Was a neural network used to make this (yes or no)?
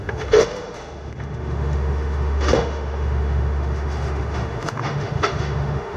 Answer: yes